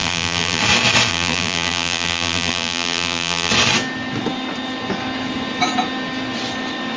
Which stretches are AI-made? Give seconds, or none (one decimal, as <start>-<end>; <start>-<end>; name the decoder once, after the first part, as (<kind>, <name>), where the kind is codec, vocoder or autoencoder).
0.0-0.6 (vocoder, BigVGAN v2); 1.1-3.5